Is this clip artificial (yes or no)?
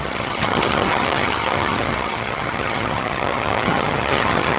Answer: yes